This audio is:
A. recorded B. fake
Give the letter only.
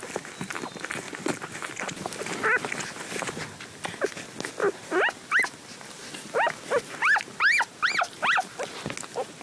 A